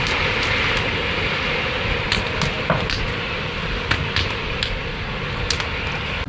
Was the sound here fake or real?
real